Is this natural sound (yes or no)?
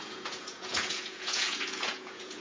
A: no